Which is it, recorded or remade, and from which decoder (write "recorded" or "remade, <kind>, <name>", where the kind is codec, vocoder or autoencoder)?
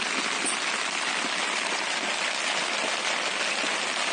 recorded